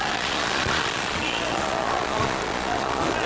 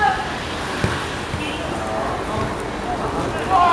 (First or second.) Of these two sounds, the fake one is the first